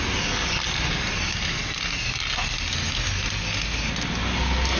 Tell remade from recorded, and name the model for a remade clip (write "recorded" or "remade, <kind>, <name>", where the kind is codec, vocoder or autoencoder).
recorded